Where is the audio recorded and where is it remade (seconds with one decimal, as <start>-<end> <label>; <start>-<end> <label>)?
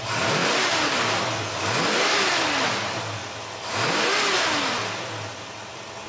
0.0-6.1 recorded